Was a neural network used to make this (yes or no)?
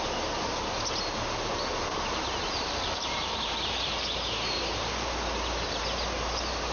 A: yes